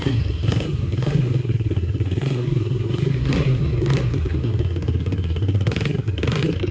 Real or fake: fake